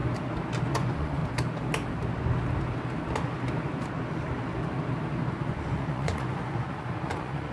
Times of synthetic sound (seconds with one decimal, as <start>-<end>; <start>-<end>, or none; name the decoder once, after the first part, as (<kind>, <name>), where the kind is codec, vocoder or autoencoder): 0.7-1.2 (vocoder, Vocos); 5.3-7.5